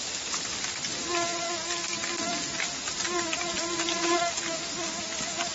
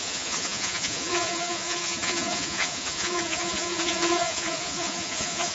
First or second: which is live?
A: first